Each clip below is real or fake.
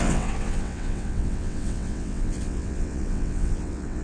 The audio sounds fake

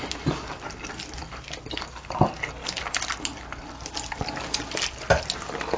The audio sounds real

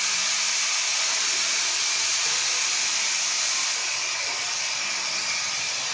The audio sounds real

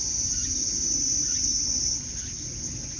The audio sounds real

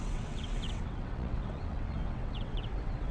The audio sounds fake